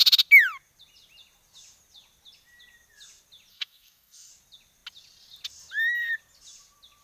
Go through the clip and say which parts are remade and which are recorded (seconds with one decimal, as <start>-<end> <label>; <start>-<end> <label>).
0.0-3.5 recorded; 3.5-4.3 remade; 4.3-7.0 recorded